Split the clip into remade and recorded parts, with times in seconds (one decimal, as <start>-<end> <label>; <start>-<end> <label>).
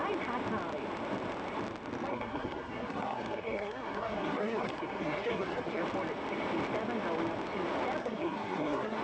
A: 0.0-2.1 recorded; 2.1-5.8 remade; 5.8-8.0 recorded; 8.0-9.0 remade